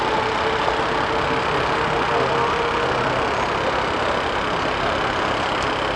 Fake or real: real